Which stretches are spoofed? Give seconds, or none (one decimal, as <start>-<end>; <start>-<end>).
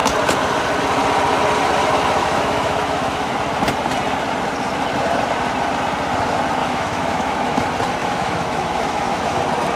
2.2-3.3; 6.6-7.6; 8.0-9.4